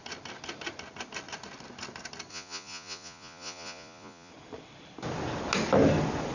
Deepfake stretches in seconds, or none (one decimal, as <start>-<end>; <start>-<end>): 2.3-4.3